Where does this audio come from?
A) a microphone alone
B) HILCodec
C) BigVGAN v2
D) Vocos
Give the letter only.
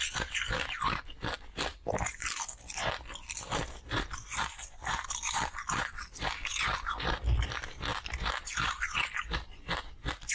A